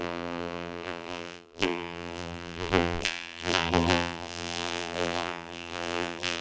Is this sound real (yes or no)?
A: no